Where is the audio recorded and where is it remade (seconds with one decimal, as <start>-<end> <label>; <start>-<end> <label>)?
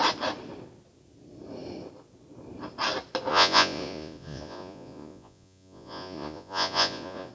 0.0-3.3 recorded; 3.3-7.3 remade